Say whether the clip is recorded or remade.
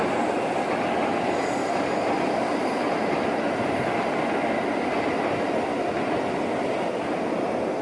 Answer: recorded